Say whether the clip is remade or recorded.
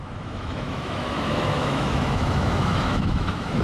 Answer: remade